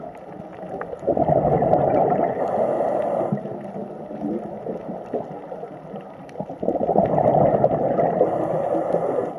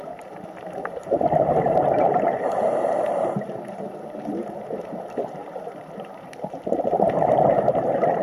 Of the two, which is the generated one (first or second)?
second